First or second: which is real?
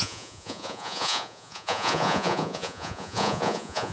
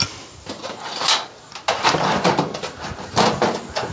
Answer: second